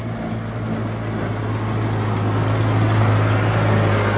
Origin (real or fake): real